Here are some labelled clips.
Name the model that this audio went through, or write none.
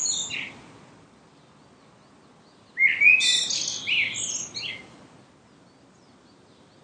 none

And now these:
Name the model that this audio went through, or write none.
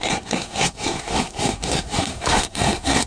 codec, SNAC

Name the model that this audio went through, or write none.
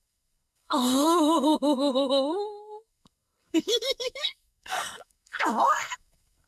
codec, SNAC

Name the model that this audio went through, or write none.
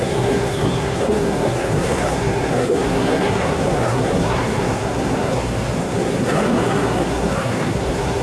codec, SNAC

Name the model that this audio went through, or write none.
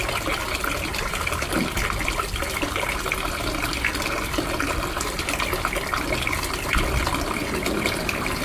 none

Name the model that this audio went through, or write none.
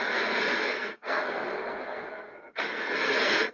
codec, SNAC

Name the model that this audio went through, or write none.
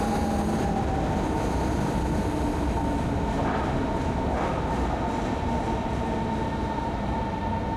none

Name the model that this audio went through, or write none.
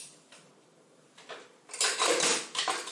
none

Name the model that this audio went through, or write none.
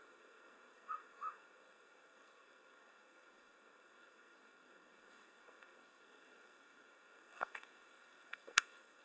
codec, SNAC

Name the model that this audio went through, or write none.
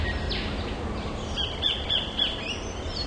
none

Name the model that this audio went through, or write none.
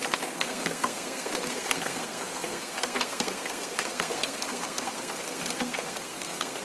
codec, SNAC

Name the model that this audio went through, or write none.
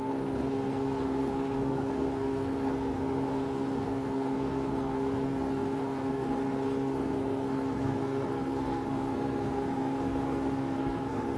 codec, SNAC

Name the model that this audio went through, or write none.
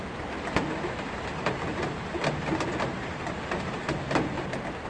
none